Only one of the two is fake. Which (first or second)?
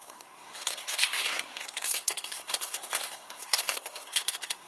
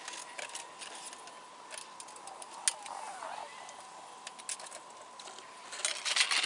first